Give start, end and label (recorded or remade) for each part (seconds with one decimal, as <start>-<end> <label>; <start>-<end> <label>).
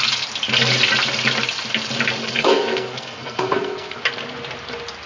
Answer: 0.0-2.2 recorded; 2.2-4.0 remade; 4.0-5.1 recorded